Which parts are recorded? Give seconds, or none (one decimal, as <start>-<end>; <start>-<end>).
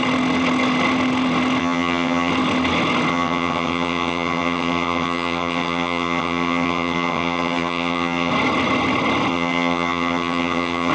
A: 0.0-1.6; 2.3-3.1; 8.3-9.3